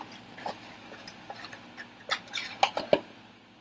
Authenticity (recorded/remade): recorded